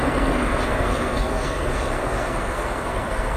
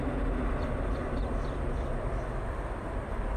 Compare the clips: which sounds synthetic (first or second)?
first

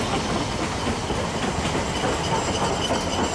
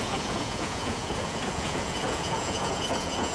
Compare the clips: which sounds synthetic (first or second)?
second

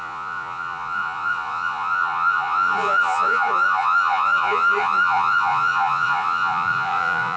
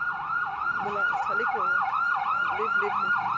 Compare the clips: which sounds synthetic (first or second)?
first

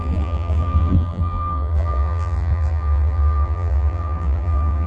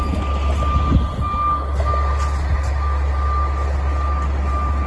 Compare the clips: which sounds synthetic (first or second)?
first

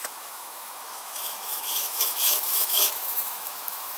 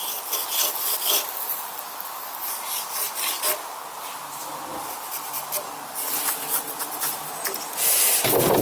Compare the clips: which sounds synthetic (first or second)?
first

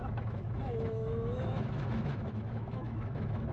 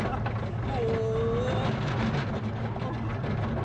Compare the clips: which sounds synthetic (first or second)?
first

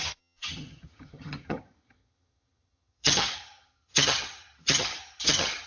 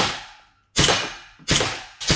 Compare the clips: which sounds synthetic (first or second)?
first